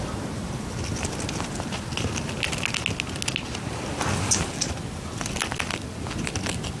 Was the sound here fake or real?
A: real